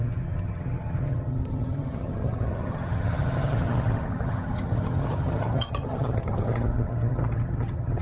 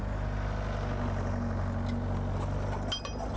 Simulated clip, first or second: first